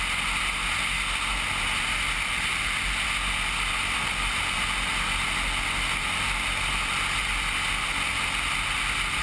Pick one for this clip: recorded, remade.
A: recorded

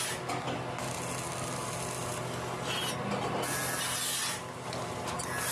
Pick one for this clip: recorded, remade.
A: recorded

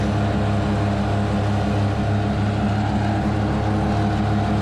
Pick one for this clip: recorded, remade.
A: recorded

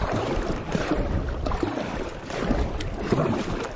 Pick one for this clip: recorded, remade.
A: recorded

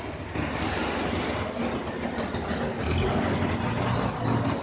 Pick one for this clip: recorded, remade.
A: recorded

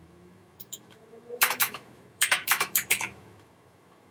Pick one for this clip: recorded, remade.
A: remade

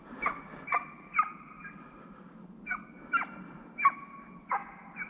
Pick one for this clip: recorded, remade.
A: recorded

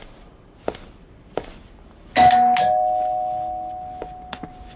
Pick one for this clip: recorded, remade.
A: recorded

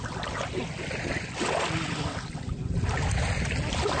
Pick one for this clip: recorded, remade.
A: recorded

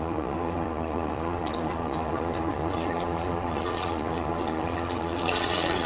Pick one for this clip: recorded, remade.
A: remade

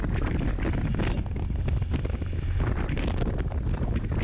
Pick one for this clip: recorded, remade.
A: recorded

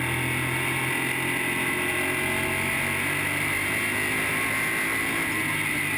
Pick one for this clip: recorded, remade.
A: recorded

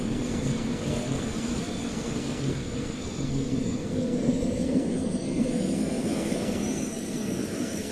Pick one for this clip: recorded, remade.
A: remade